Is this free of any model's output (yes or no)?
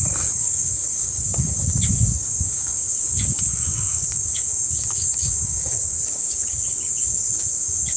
no